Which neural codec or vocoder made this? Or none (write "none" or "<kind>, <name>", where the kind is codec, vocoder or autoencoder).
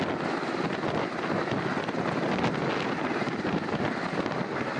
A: none